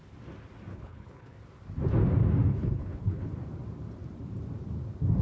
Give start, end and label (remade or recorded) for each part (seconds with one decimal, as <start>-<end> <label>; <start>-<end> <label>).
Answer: 0.0-0.7 recorded; 0.7-1.4 remade; 1.4-2.5 recorded; 2.5-3.3 remade; 3.3-5.2 recorded

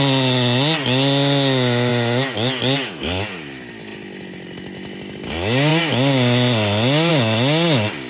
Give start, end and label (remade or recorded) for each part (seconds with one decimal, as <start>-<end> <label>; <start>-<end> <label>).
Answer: 0.0-8.1 recorded

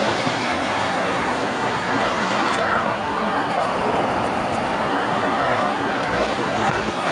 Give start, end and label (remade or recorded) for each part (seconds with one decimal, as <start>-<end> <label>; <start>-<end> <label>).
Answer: 0.0-3.7 remade; 3.7-4.8 recorded; 4.8-7.1 remade

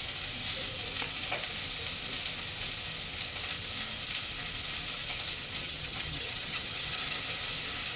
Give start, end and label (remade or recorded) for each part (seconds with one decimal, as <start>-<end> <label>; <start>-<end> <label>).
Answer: 0.0-5.6 recorded; 5.6-7.2 remade; 7.2-8.0 recorded